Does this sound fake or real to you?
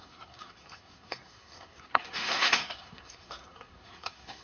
fake